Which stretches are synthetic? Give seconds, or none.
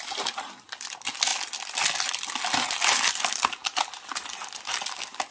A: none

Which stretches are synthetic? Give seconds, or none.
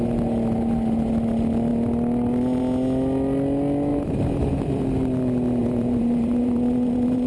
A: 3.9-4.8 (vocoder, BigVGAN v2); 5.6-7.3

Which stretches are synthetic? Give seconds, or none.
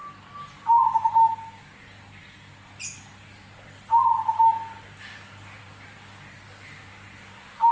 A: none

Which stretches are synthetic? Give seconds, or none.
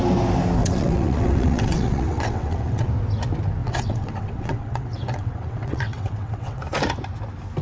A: 0.6-2.9 (vocoder, WaveNeXt); 3.6-6.6